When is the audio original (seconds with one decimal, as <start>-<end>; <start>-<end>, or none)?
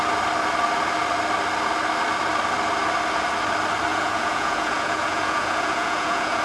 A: 0.0-3.9